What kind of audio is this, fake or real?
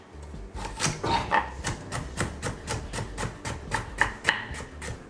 real